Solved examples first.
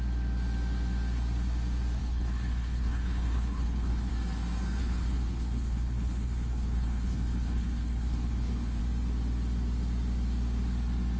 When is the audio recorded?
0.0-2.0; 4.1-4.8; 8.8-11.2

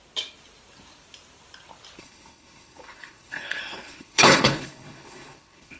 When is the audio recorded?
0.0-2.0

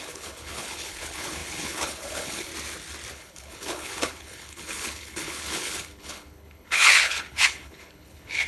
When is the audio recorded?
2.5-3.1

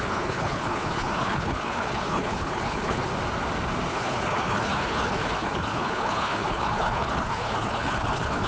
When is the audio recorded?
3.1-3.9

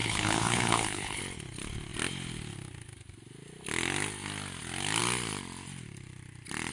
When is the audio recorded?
1.2-6.7

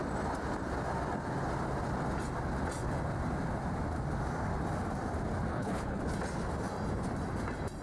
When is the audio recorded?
0.0-5.5; 6.0-7.8

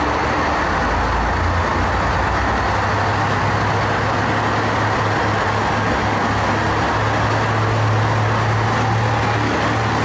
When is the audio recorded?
0.0-10.0